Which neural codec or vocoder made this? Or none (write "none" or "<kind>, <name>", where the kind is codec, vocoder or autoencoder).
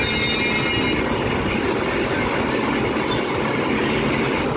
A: none